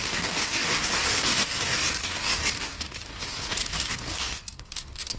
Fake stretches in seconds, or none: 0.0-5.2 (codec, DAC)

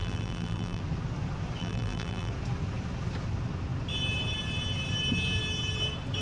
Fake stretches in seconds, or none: 0.0-0.8 (vocoder, BigVGAN v2); 1.6-2.3

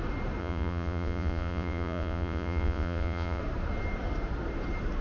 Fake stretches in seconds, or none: 0.4-3.4 (vocoder, Vocos)